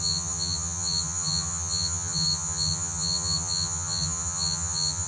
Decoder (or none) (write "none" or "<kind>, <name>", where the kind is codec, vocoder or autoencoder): vocoder, HiFi-GAN